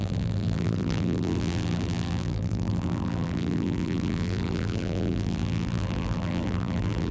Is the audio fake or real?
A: fake